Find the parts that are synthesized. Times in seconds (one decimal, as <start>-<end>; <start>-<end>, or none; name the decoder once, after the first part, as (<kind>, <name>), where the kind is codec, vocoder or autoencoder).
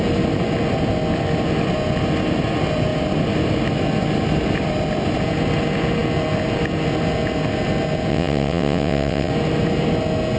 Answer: 8.1-9.3 (vocoder, WaveNeXt)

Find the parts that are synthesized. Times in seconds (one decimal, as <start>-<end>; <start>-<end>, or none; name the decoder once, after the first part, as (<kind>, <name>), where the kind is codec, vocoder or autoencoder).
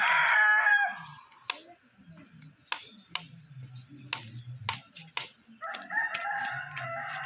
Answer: none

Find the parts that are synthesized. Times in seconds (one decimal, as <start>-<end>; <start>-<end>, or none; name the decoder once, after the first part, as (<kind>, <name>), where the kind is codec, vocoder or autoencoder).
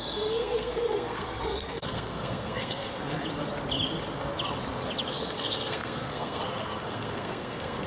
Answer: 0.0-3.1 (codec, SNAC); 5.1-7.9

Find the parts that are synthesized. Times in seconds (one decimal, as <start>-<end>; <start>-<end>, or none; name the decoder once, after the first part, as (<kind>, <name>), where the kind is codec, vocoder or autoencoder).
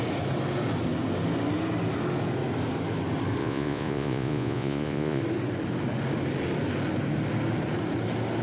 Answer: 3.4-5.2 (vocoder, Vocos)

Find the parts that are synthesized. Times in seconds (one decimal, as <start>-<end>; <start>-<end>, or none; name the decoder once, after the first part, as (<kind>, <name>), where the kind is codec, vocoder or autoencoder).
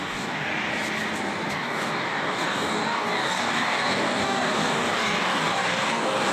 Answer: 0.0-0.5 (codec, DAC); 1.5-6.3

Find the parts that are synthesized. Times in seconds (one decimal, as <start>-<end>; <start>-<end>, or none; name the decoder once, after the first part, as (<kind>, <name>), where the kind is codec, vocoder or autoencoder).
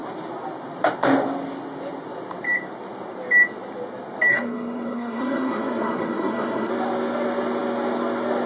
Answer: 4.3-6.7 (codec, SNAC)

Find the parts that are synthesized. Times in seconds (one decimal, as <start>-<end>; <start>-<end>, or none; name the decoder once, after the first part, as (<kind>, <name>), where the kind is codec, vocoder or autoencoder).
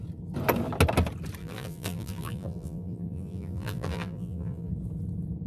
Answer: 1.4-4.7 (vocoder, BigVGAN v2)